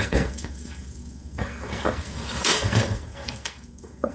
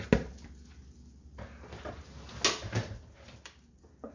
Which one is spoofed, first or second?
first